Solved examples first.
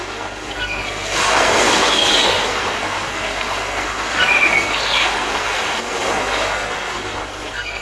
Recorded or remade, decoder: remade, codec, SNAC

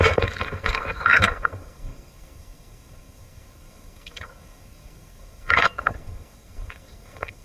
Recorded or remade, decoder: remade, codec, SNAC